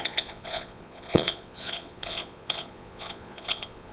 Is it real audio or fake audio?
fake